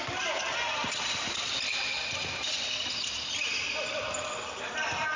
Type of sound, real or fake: real